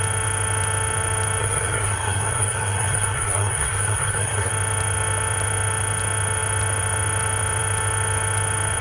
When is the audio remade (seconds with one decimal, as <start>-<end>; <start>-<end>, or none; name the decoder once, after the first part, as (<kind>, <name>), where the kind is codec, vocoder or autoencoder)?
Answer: 1.4-4.5 (codec, SNAC)